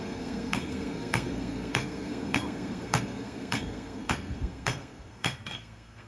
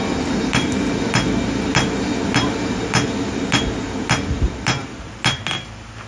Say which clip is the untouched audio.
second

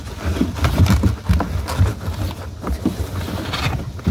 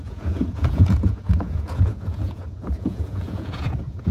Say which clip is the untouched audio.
first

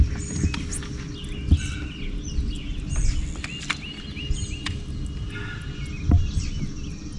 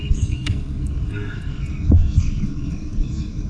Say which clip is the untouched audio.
first